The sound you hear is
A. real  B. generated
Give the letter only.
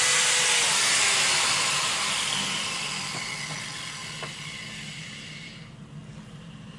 A